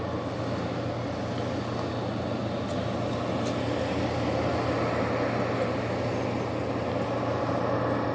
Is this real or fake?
real